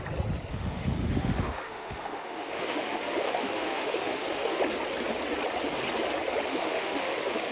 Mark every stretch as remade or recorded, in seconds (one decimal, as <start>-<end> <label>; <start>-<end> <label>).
0.0-0.5 recorded; 0.5-4.6 remade; 4.6-6.5 recorded; 6.5-7.5 remade